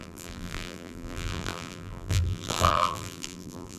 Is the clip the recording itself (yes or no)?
no